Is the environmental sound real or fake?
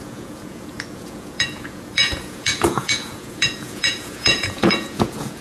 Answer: fake